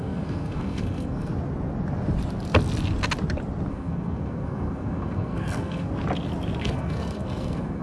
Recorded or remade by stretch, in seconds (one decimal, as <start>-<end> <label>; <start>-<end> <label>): 0.0-1.3 remade; 1.3-3.7 recorded; 3.7-5.9 remade; 5.9-6.6 recorded; 6.6-7.8 remade